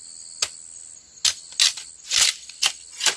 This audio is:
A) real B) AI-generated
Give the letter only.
A